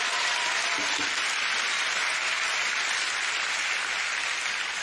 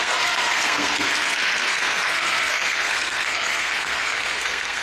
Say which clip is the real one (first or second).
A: first